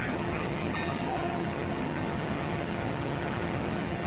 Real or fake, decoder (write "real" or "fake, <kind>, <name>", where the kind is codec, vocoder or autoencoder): fake, vocoder, HiFi-GAN